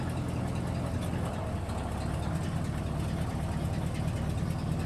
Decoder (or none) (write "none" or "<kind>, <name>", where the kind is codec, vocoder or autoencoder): none